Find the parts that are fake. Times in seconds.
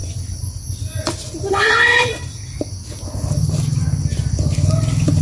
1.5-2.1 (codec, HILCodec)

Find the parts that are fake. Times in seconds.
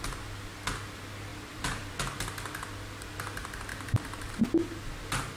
1.3-1.9 (vocoder, BigVGAN v2); 3.7-4.3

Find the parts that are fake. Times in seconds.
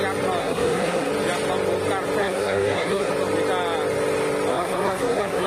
0.4-1.1 (codec, SNAC); 2.2-3.1; 4.5-5.5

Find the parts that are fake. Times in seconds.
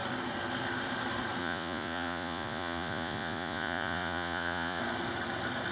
1.4-4.8 (vocoder, Vocos)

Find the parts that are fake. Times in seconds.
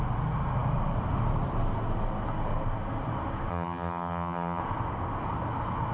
3.5-4.6 (vocoder, HiFi-GAN)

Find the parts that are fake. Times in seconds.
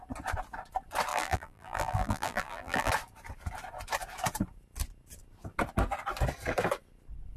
1.1-2.9 (vocoder, BigVGAN v2)